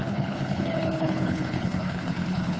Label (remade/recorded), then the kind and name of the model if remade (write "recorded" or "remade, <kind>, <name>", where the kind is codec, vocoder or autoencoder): remade, codec, HILCodec